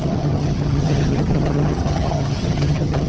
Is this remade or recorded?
remade